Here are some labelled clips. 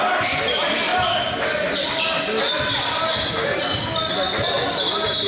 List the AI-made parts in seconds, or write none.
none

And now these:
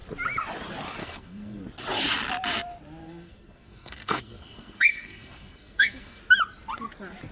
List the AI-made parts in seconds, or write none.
1.0-1.6; 3.0-6.2

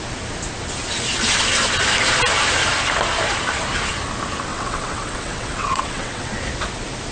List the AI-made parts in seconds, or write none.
4.5-6.3

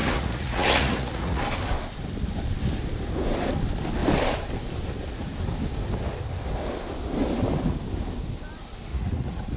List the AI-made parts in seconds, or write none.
0.0-1.4; 8.9-9.6